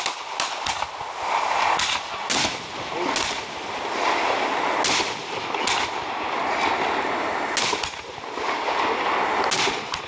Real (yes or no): yes